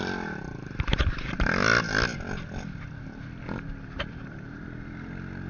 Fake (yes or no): no